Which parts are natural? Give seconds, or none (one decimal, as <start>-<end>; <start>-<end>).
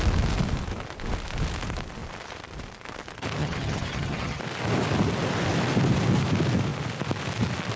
0.0-3.4; 4.4-7.8